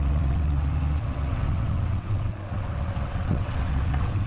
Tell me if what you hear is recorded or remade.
remade